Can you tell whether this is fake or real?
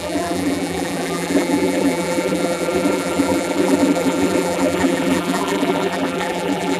fake